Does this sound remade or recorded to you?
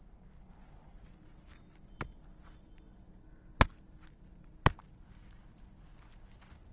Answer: recorded